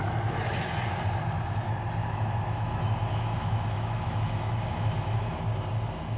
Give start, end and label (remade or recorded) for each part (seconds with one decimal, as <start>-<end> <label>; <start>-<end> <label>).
0.0-0.7 remade; 0.7-2.0 recorded; 2.0-5.3 remade; 5.3-6.2 recorded